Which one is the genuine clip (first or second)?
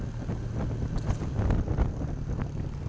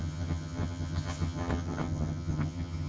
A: first